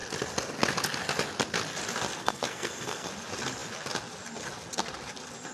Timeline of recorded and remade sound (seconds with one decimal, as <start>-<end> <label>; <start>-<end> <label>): 0.0-2.2 recorded; 2.2-3.1 remade; 3.1-5.5 recorded